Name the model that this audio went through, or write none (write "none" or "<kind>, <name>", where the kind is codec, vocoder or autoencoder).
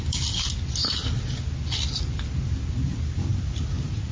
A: none